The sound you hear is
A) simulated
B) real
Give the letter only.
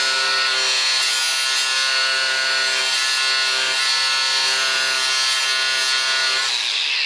B